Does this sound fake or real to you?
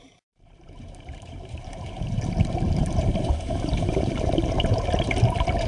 fake